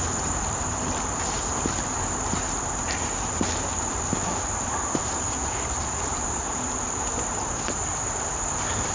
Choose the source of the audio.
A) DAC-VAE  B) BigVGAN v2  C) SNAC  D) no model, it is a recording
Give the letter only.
B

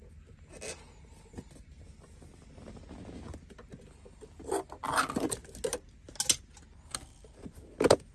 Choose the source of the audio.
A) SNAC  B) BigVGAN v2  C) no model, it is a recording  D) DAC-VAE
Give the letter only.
C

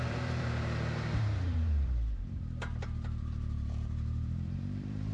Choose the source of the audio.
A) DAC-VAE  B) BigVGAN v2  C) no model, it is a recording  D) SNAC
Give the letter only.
B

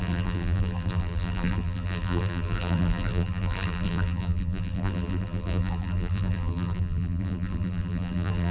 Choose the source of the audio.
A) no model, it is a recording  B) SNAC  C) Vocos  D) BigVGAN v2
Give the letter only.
D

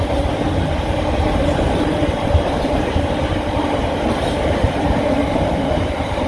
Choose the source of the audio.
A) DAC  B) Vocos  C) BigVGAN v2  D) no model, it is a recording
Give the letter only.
C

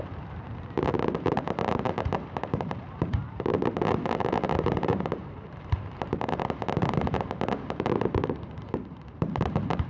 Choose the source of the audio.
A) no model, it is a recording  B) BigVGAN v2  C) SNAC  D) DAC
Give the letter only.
B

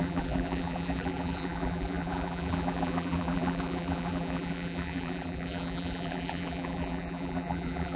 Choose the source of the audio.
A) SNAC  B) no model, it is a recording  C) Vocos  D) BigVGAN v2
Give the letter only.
D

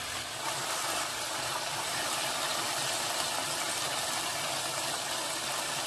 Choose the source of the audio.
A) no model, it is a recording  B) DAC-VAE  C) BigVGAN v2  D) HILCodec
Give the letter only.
A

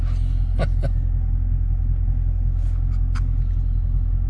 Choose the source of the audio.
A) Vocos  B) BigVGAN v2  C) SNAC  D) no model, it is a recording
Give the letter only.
D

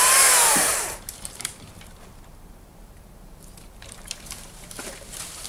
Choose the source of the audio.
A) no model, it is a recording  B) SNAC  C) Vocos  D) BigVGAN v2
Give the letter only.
D